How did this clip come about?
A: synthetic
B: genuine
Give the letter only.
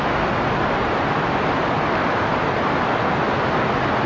B